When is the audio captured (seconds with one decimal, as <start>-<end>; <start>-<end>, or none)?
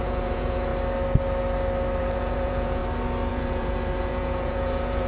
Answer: 0.7-2.0; 2.8-3.3